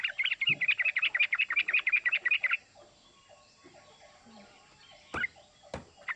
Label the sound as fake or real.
real